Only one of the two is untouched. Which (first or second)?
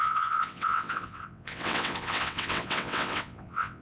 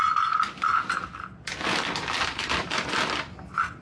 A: second